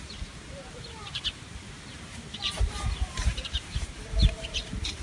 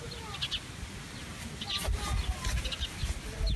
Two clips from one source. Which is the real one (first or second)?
second